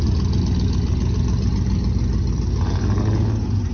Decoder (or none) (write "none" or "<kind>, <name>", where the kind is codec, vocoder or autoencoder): none